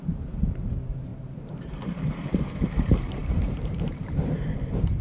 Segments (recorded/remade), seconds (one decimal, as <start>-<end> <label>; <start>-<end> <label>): 0.0-5.0 remade